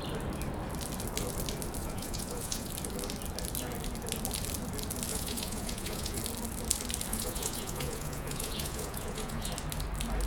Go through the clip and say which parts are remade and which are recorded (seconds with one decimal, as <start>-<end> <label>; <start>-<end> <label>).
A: 0.0-1.8 recorded; 1.8-2.7 remade; 2.7-5.1 recorded; 5.1-6.2 remade; 6.2-7.1 recorded; 7.1-9.5 remade; 9.5-10.3 recorded